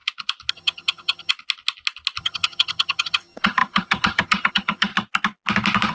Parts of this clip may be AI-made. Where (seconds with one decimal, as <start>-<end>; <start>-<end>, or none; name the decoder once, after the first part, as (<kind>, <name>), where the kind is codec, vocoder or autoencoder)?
0.5-1.3 (vocoder, HiFi-GAN); 2.2-4.9